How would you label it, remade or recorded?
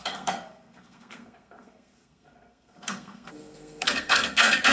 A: remade